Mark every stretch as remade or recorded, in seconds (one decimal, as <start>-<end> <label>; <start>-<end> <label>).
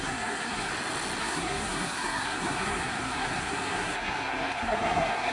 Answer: 0.0-0.7 remade; 0.7-1.2 recorded; 1.2-5.3 remade